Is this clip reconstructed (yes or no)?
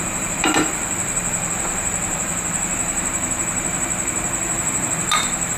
yes